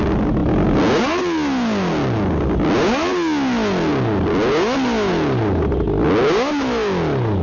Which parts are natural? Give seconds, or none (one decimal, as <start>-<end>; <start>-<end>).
0.0-7.4